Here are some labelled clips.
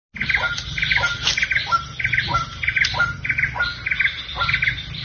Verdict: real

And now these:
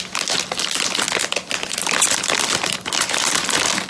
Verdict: real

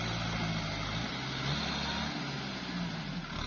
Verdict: real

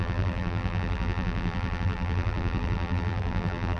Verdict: fake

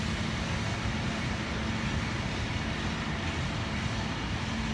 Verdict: real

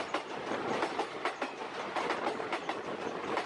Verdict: real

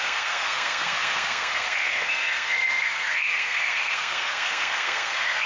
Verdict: fake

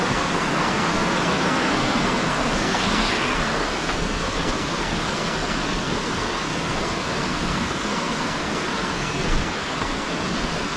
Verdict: fake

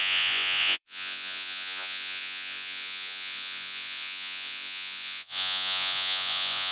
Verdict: fake